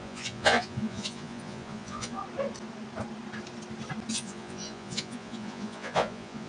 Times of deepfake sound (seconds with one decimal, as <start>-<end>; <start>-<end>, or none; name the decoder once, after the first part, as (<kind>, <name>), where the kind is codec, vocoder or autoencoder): 0.0-2.2 (vocoder, Vocos); 4.1-6.5